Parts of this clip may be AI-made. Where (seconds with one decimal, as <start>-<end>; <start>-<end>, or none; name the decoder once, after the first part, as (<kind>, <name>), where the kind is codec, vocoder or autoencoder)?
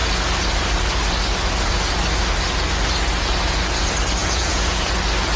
4.2-4.9 (vocoder, Vocos)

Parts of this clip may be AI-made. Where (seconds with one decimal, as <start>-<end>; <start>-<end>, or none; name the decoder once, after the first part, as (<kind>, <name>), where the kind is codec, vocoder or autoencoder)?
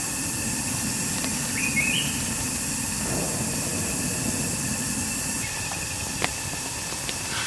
none